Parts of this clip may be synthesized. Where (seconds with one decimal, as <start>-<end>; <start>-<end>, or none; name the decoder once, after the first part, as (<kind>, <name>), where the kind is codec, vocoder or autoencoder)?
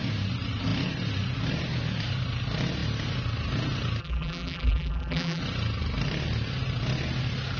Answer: 4.0-5.4 (vocoder, BigVGAN v2)